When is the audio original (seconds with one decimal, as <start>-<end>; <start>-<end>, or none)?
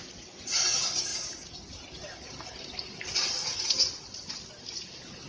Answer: 0.0-5.3